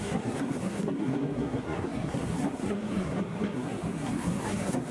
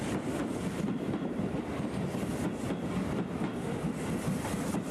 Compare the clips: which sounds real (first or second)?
second